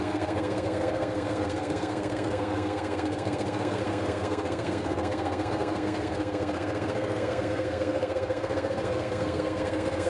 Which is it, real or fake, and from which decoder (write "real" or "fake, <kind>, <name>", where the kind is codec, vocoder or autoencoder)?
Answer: fake, codec, SNAC